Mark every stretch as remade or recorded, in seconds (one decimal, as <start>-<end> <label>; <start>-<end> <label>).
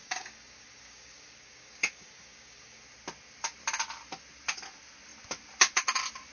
0.0-2.8 remade; 2.8-6.3 recorded